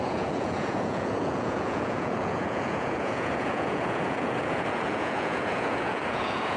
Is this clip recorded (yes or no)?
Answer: no